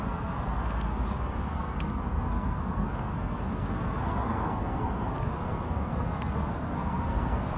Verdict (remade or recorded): remade